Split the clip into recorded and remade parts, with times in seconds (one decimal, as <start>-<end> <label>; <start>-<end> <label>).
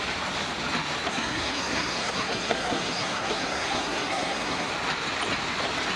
0.0-1.1 recorded; 1.1-4.7 remade; 4.7-6.0 recorded